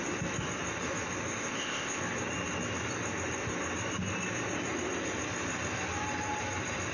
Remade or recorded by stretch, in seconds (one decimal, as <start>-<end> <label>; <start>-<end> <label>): 0.0-1.3 recorded; 1.3-2.0 remade; 2.0-6.9 recorded